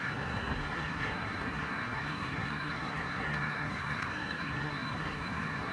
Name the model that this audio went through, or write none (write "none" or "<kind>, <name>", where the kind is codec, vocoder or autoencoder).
codec, SNAC